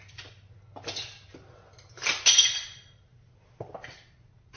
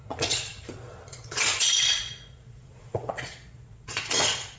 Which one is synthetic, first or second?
second